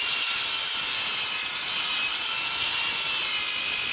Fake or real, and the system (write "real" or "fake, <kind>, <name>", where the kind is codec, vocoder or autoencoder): real